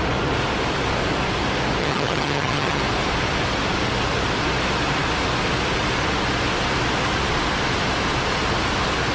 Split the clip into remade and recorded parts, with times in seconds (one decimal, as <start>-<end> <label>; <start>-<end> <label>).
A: 0.0-1.8 recorded; 1.8-2.8 remade; 2.8-9.1 recorded